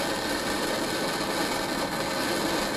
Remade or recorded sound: recorded